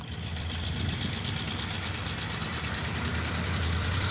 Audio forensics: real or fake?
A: fake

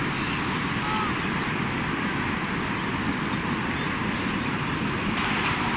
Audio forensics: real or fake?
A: real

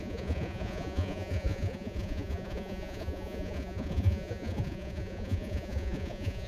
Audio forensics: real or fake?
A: fake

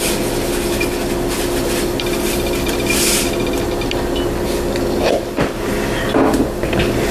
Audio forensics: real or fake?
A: real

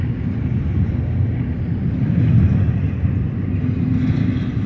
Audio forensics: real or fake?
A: real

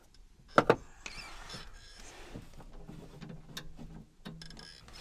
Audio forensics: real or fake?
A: real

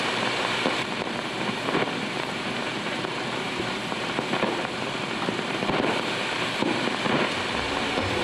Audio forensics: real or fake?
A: fake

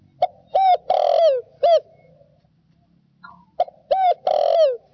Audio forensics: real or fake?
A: real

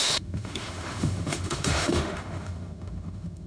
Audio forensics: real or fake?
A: fake